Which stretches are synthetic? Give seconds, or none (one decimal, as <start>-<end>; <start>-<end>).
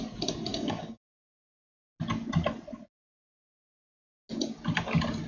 0.5-1.2